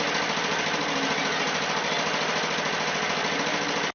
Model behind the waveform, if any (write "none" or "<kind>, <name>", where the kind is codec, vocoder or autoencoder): none